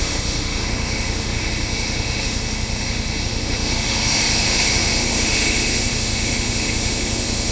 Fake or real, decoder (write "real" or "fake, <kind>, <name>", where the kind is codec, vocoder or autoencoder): fake, autoencoder, DAC-VAE